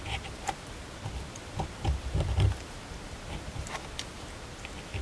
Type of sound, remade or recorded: recorded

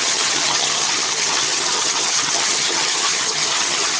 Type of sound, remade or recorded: remade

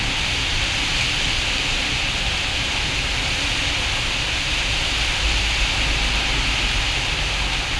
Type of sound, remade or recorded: recorded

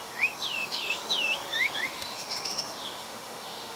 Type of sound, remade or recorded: remade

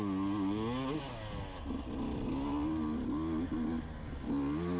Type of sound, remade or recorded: recorded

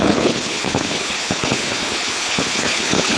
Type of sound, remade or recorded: remade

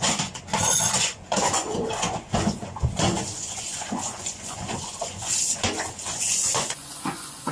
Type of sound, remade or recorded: remade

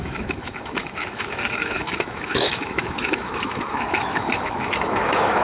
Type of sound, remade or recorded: remade